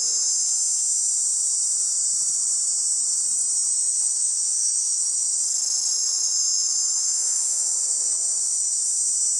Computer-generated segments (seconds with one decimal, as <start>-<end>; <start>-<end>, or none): 3.7-5.4; 5.9-8.8